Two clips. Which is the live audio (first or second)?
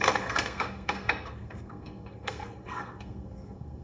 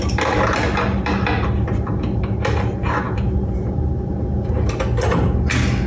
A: second